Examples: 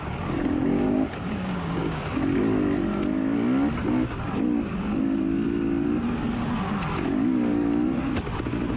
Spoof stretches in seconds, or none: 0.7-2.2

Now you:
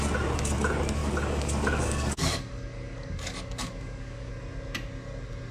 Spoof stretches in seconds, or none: 1.0-4.3

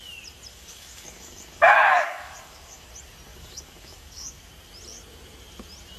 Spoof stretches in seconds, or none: 0.5-2.9; 3.3-4.5

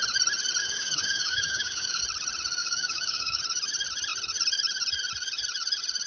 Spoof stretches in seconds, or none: 0.6-2.0; 2.6-3.4

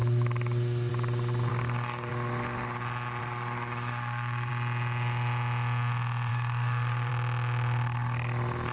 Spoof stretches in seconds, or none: 1.5-2.1; 3.2-4.5; 6.3-7.1

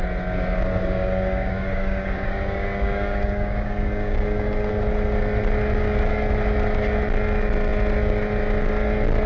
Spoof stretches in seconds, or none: 0.7-4.7